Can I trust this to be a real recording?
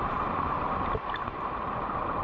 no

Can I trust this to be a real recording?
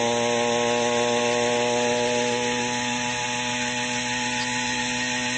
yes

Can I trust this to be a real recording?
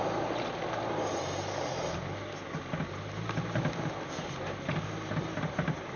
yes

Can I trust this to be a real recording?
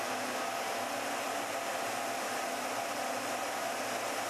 yes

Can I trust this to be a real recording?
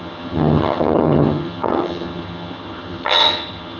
no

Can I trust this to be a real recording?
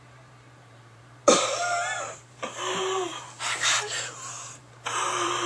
no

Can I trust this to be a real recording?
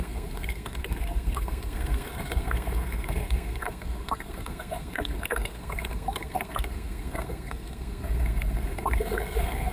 no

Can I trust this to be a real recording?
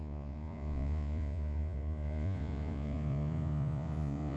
no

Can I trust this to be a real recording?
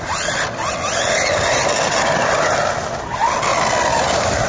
yes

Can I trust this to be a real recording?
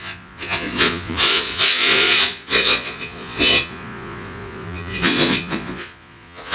no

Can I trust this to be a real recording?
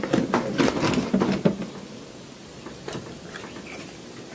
yes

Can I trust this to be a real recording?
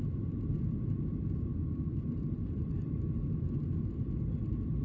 yes